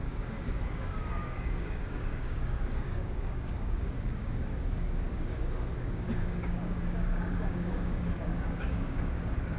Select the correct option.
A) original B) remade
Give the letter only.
B